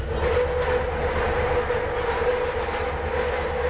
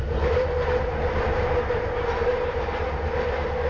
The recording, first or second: first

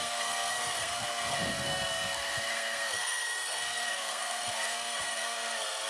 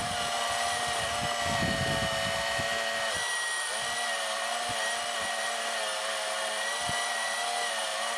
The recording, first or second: second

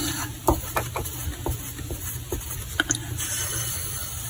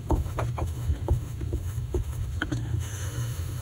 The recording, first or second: first